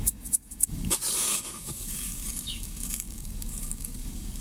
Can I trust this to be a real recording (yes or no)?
no